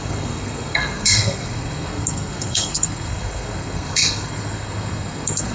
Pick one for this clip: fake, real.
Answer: fake